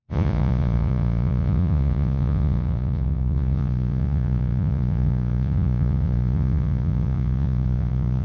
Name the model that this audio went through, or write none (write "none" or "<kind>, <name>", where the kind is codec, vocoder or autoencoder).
vocoder, Vocos